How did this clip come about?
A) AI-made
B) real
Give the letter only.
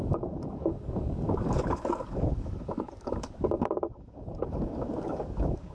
A